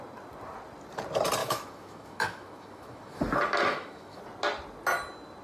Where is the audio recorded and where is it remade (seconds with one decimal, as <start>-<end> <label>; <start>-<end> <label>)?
0.0-1.4 recorded; 1.4-3.2 remade; 3.2-3.7 recorded; 3.7-4.2 remade; 4.2-5.4 recorded